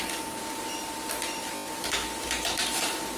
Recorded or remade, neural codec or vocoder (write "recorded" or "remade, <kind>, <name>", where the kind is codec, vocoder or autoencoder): recorded